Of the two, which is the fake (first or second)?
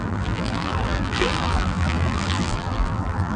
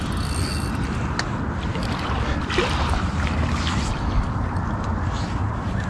first